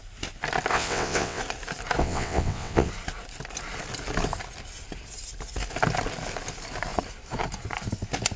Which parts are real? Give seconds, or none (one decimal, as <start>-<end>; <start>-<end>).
0.0-0.7; 1.4-2.0; 2.9-8.4